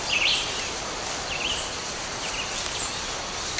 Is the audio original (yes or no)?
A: yes